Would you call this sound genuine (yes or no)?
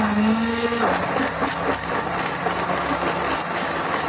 yes